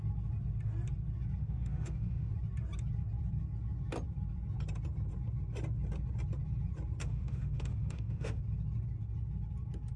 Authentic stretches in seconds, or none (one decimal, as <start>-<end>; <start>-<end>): 0.0-1.4; 2.3-7.0; 8.4-10.0